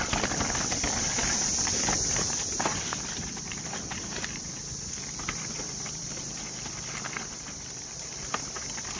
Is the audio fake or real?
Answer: fake